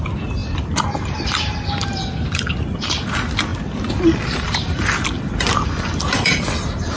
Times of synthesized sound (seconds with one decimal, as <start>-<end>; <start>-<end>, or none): 0.4-3.1; 3.5-7.0